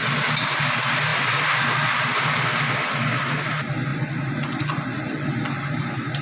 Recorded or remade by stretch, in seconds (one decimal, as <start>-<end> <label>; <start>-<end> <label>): 0.0-6.2 recorded

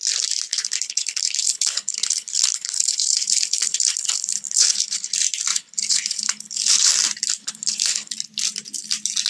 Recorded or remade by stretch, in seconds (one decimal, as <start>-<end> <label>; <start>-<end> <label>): 0.0-0.5 recorded; 0.5-5.1 remade; 5.1-5.5 recorded; 5.5-6.9 remade; 6.9-7.4 recorded; 7.4-8.1 remade; 8.1-9.3 recorded

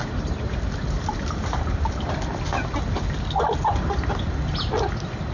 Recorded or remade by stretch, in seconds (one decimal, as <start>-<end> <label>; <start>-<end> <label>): 0.0-2.4 remade; 2.4-5.3 recorded